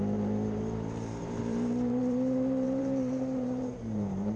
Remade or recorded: remade